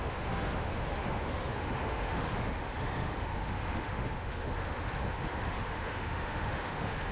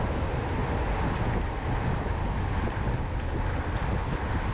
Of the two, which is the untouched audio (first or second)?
second